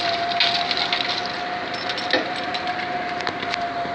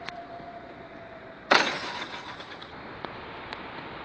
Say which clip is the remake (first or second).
second